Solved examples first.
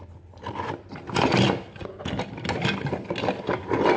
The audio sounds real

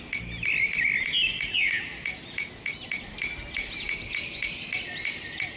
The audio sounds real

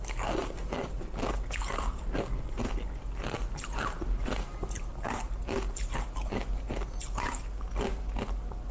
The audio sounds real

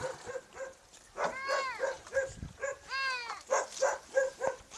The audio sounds real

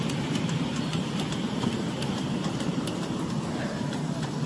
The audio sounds fake